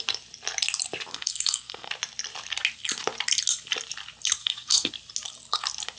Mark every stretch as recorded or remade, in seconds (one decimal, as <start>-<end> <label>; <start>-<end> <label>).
0.0-1.1 recorded; 1.1-1.9 remade; 1.9-4.4 recorded; 4.4-4.9 remade; 4.9-6.0 recorded